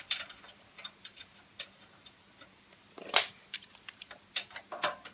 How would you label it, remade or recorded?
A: remade